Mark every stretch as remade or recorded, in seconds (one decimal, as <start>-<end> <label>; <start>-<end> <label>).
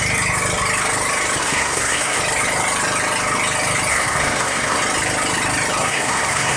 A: 0.0-1.4 recorded; 1.4-2.2 remade; 2.2-3.9 recorded; 3.9-4.8 remade; 4.8-5.8 recorded; 5.8-6.6 remade